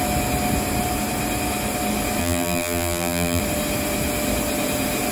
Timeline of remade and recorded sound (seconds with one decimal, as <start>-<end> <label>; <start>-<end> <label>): 0.0-2.2 recorded; 2.2-3.4 remade; 3.4-5.1 recorded